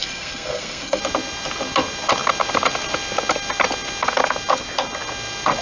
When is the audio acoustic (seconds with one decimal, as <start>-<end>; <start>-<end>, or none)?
1.0-5.6